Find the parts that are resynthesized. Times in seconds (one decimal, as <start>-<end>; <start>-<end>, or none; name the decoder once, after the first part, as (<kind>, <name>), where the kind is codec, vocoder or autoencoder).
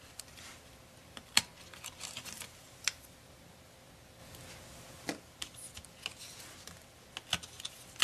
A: none